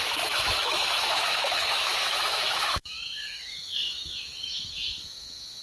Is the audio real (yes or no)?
no